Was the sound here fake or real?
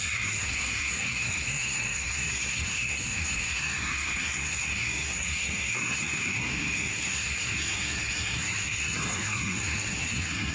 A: fake